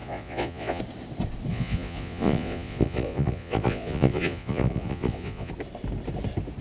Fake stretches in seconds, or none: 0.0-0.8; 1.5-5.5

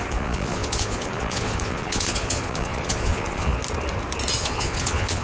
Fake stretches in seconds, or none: 0.0-3.6; 4.4-5.2

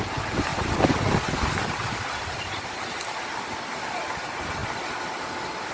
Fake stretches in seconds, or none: none

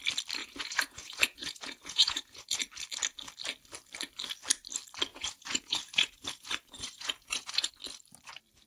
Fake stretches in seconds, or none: 0.4-2.6; 5.1-7.7

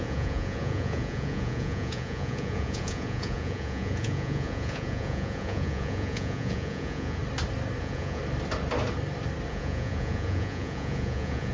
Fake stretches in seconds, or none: 0.0-7.2; 7.8-8.2; 9.5-11.5